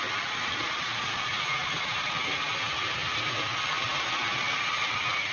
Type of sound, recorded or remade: recorded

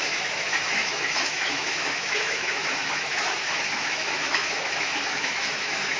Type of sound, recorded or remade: remade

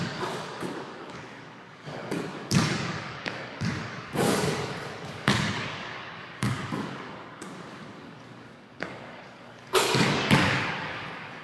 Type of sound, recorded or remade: remade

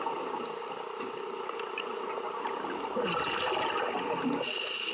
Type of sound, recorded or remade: recorded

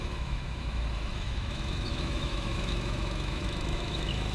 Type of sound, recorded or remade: remade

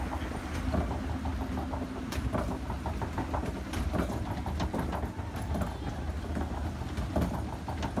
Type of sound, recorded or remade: recorded